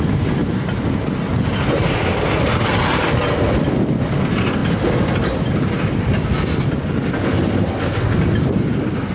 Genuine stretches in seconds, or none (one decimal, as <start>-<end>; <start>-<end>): 0.0-9.1

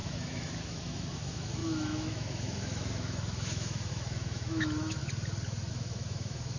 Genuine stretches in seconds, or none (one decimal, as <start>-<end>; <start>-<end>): 5.0-5.7

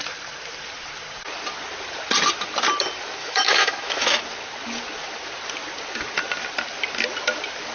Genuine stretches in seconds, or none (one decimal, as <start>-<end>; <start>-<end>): 0.0-3.2; 4.2-7.7

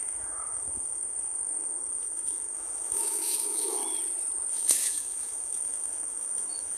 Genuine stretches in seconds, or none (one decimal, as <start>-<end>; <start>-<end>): 3.8-4.5